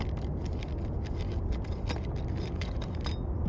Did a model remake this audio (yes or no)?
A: no